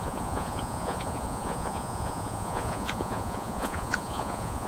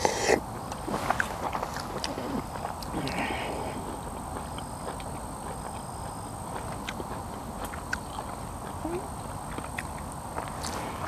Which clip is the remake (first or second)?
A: first